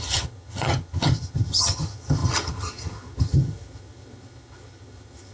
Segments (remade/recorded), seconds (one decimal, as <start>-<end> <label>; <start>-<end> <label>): 0.0-5.3 remade